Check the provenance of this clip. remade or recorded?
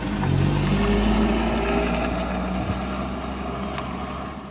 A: recorded